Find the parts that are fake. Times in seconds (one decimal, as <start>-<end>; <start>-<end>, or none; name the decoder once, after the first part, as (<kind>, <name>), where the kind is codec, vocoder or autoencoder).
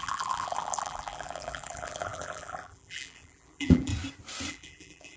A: 0.0-3.9 (vocoder, BigVGAN v2); 4.5-5.2